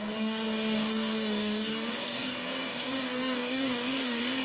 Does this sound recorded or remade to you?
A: remade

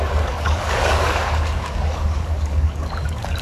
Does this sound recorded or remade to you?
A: remade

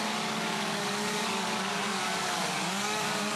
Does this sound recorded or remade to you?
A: remade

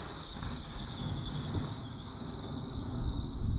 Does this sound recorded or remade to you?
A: remade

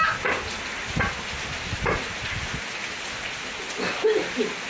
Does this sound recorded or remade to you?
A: recorded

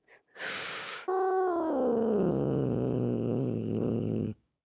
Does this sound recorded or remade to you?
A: remade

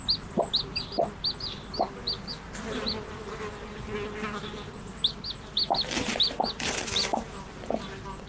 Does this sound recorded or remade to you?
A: recorded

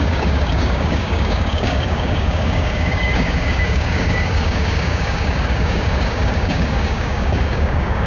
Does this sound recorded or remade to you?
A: remade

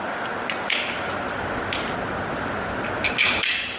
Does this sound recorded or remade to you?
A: recorded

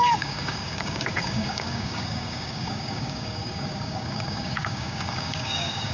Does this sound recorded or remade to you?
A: remade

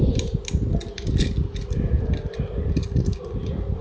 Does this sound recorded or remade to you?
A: recorded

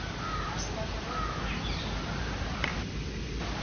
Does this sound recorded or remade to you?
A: recorded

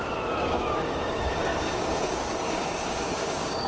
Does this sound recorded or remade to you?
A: remade